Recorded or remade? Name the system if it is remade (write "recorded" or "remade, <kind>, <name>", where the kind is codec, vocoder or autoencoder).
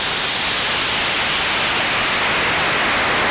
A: recorded